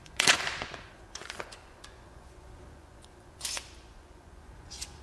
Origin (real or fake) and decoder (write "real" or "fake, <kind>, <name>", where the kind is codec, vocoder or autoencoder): fake, vocoder, Vocos